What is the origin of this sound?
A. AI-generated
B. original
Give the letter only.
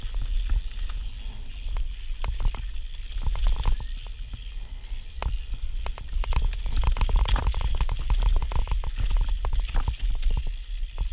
B